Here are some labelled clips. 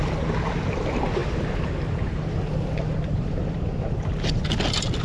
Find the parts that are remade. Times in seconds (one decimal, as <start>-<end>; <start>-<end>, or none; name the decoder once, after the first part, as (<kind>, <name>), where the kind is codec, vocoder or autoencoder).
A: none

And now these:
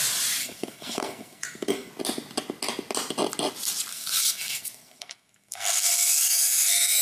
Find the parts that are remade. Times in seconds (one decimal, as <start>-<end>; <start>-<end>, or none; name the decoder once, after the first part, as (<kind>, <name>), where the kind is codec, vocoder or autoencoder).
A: 0.4-1.9 (codec, SNAC); 3.9-7.0

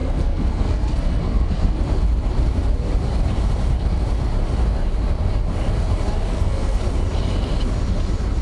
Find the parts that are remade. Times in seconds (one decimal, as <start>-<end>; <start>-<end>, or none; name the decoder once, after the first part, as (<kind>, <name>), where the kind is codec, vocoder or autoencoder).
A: 0.0-1.8 (codec, SNAC); 6.3-6.8

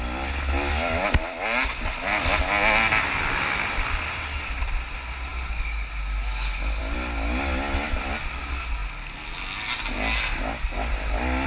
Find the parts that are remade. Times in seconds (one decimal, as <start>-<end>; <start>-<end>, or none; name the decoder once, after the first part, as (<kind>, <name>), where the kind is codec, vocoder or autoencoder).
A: none

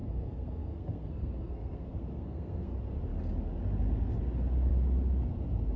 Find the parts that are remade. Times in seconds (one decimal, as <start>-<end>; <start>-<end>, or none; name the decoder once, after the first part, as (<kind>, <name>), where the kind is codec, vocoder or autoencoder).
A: 0.0-2.7 (codec, SNAC)